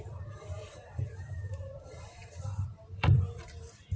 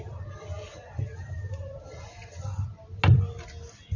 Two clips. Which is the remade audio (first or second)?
first